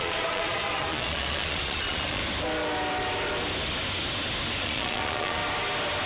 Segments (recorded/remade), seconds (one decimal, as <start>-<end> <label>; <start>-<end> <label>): 0.0-2.2 remade; 2.2-4.6 recorded; 4.6-5.4 remade; 5.4-6.1 recorded